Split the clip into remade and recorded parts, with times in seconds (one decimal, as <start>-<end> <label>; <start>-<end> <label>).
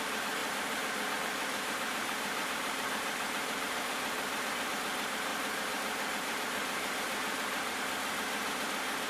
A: 0.0-0.4 recorded; 0.4-4.7 remade; 4.7-5.3 recorded; 5.3-7.8 remade; 7.8-9.1 recorded